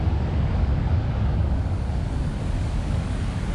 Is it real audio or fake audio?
fake